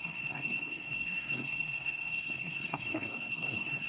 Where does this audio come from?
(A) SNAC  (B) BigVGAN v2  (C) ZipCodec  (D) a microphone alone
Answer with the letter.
A